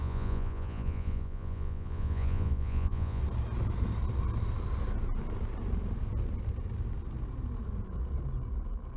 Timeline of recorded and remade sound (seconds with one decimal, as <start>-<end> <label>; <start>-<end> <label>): 0.0-3.2 remade; 3.2-9.0 recorded